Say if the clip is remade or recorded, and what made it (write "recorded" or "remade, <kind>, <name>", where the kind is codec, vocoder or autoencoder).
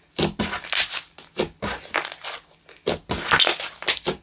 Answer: recorded